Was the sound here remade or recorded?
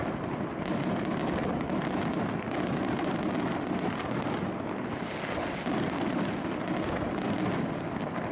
recorded